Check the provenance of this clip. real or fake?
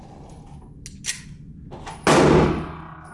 real